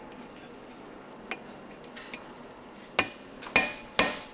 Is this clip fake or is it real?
real